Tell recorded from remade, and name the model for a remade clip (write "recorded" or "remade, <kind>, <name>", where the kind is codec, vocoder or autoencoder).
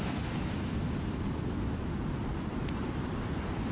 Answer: remade, vocoder, BigVGAN v2